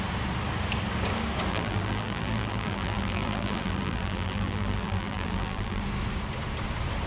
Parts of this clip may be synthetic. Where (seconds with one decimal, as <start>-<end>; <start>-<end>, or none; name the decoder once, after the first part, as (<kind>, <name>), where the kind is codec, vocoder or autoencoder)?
1.5-5.8 (vocoder, BigVGAN v2)